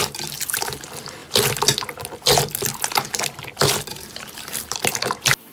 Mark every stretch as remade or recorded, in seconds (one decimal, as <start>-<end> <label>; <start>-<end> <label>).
0.0-3.9 recorded; 3.9-4.8 remade; 4.8-5.5 recorded